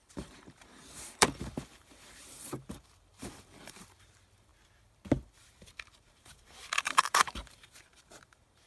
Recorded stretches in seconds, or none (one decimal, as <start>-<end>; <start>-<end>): 4.5-5.4